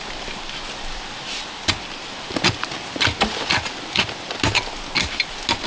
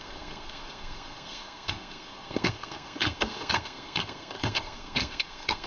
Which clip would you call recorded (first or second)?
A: first